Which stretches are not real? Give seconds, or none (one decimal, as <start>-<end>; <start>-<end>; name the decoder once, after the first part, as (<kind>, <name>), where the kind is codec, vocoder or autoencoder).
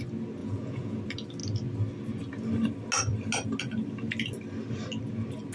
0.4-1.0 (vocoder, Vocos)